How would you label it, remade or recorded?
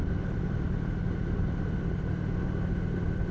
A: recorded